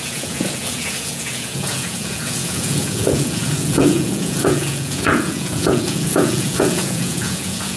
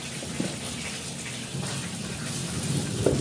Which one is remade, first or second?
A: first